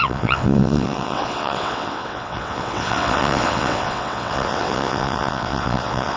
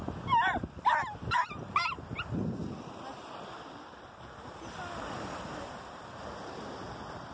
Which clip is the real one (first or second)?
second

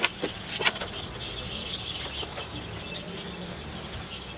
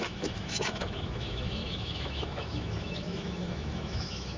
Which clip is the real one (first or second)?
first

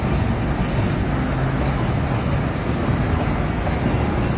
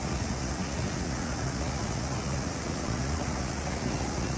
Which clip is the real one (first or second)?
first